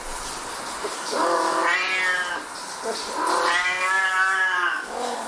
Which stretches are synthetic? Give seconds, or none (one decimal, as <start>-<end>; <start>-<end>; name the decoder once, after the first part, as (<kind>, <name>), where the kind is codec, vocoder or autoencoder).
0.9-1.6 (codec, DAC); 3.6-5.3